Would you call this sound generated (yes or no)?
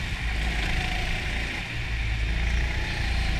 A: no